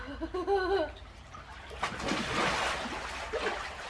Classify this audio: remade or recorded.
recorded